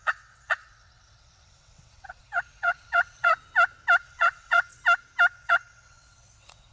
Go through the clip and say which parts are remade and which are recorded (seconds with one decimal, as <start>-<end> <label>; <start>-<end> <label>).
0.0-3.3 remade; 3.3-4.0 recorded; 4.0-4.7 remade; 4.7-5.3 recorded; 5.3-6.7 remade